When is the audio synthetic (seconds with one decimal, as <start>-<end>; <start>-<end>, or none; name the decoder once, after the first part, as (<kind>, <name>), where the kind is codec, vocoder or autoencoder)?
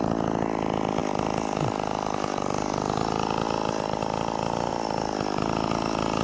none